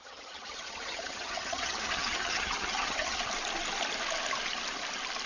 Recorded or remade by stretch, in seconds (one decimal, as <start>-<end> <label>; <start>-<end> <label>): 0.0-3.2 remade; 3.2-5.3 recorded